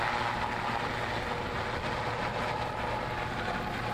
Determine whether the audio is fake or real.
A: real